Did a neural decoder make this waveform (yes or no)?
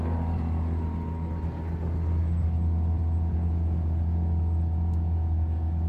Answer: no